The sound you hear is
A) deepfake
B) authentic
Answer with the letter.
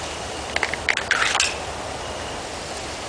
B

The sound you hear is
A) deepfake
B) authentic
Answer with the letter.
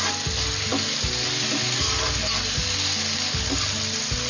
B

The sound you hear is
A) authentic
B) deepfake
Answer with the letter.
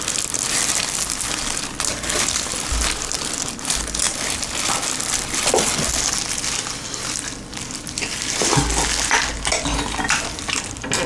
A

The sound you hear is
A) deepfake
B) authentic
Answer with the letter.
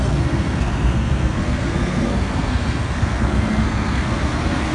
A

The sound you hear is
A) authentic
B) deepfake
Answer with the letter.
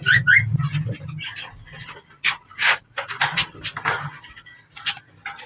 A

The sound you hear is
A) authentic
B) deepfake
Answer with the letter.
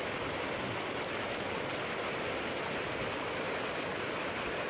A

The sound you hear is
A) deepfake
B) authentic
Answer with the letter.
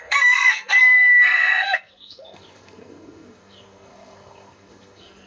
A